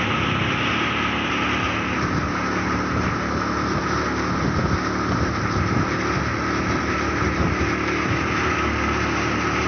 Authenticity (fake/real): real